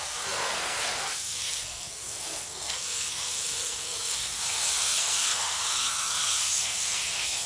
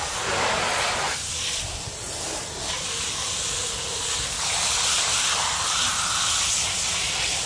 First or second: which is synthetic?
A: first